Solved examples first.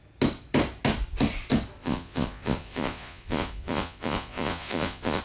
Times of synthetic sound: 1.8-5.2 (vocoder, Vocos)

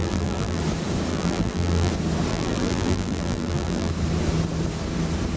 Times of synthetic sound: 0.0-0.6 (vocoder, BigVGAN v2); 1.1-1.9; 2.3-3.9

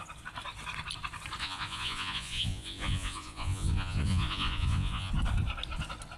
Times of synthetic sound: 1.4-5.1 (vocoder, Vocos)

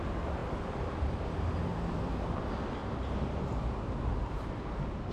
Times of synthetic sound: 1.7-2.4 (vocoder, BigVGAN v2); 2.8-3.4

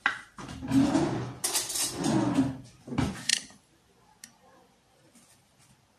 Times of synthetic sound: none